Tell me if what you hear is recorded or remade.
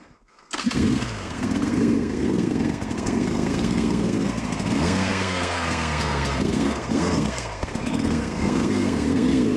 remade